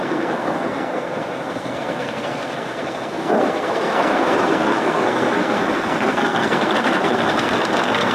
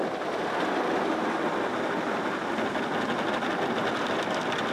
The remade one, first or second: first